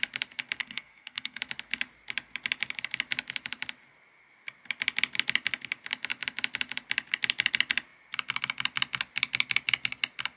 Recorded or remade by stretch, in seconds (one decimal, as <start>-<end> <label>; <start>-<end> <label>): 0.0-0.6 recorded; 0.6-1.4 remade; 1.4-10.4 recorded